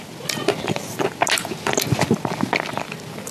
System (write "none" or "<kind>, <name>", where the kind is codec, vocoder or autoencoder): none